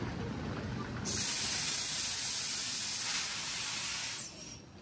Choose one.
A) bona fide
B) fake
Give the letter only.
A